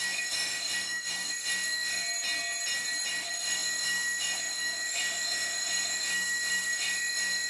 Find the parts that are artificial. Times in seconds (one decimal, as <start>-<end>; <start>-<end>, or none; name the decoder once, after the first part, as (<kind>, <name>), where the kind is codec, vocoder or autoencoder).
0.0-2.0 (autoencoder, DAC-VAE); 3.1-7.5